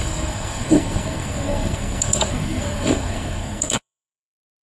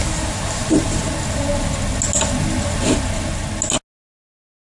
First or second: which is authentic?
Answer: second